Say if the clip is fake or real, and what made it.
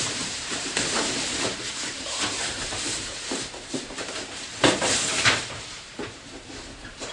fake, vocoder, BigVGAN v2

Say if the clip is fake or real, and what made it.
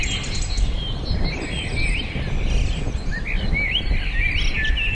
real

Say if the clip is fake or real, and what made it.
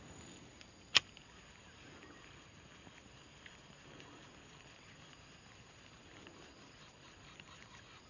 real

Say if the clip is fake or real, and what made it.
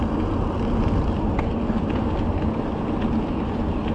real